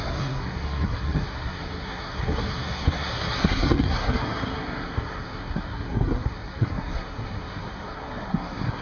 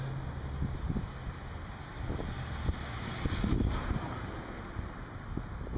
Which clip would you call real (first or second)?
second